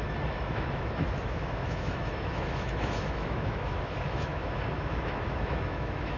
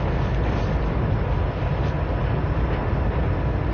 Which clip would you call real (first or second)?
second